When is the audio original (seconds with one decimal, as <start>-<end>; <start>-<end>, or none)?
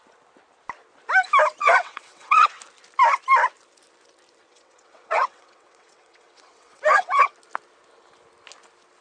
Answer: 0.0-1.6; 2.6-4.5; 7.3-9.0